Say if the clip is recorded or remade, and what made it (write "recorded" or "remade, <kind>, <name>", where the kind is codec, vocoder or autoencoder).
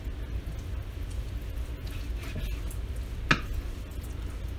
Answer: recorded